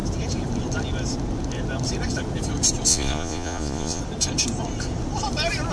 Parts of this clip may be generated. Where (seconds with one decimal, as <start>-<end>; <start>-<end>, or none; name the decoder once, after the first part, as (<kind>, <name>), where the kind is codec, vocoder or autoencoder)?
2.9-4.0 (vocoder, Vocos)